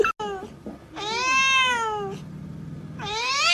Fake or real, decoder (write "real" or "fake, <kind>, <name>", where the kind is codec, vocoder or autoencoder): real